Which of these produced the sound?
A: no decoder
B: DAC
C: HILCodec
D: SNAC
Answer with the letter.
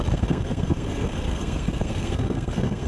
D